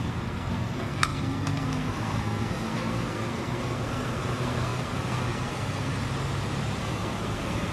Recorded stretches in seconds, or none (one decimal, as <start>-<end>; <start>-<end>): 5.9-6.8